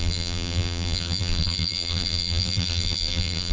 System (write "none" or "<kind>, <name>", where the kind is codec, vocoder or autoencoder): vocoder, BigVGAN v2